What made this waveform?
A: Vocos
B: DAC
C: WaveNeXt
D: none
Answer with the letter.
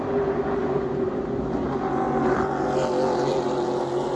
D